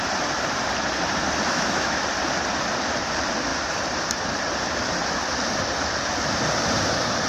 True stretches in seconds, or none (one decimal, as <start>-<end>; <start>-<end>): 0.0-1.5; 2.0-7.3